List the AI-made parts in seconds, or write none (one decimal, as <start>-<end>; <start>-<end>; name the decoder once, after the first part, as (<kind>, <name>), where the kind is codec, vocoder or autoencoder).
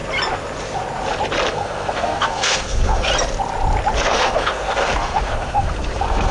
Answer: 1.5-3.1 (codec, SNAC); 4.1-6.3